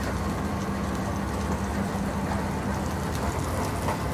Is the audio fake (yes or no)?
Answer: no